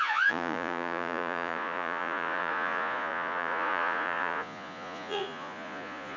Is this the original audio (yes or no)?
no